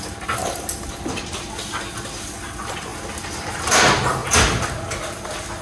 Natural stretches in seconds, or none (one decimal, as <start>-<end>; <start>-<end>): 0.0-0.4; 1.0-5.6